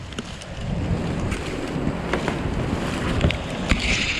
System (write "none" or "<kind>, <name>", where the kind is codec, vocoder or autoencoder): none